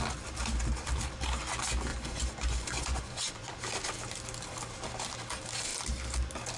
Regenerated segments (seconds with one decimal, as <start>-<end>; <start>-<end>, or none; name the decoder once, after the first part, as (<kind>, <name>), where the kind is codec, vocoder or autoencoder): 1.9-3.6 (vocoder, Vocos)